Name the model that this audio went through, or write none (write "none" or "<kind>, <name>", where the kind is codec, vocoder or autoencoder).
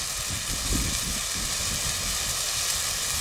none